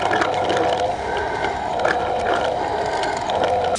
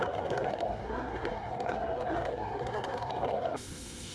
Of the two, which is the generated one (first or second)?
second